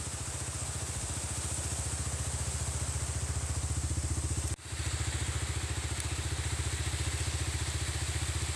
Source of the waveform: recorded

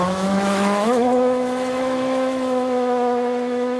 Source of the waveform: remade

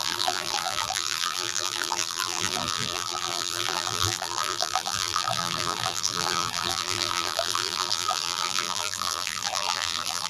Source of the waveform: remade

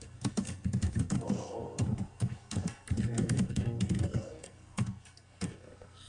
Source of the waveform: remade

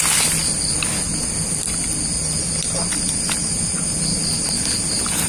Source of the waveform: recorded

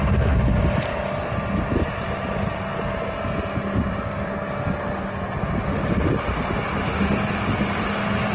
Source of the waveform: recorded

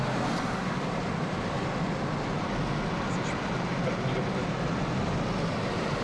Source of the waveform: recorded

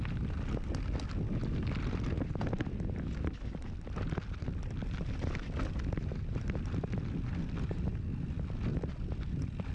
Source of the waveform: recorded